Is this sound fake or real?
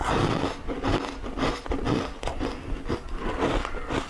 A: real